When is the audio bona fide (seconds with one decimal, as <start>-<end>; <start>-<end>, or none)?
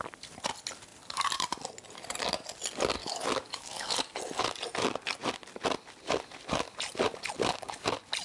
0.0-3.0; 4.0-8.2